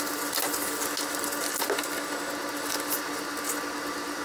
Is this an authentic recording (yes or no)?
yes